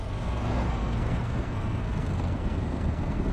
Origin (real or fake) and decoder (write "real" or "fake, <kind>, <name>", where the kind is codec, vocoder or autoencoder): fake, codec, SNAC